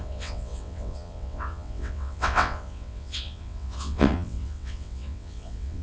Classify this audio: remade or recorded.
remade